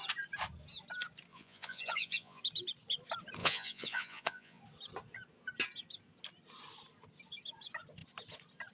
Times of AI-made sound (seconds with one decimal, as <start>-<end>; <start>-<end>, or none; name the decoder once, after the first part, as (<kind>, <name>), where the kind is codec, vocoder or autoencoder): 1.3-2.4 (vocoder, Vocos); 3.4-4.6